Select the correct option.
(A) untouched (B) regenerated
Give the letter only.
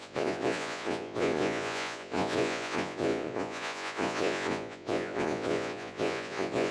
B